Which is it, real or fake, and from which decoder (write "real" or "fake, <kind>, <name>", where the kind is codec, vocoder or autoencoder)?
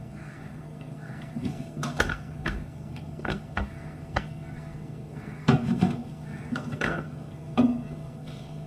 fake, codec, SNAC